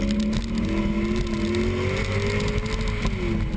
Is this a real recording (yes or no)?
yes